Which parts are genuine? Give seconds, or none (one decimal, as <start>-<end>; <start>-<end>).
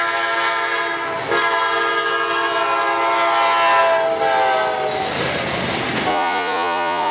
0.0-6.1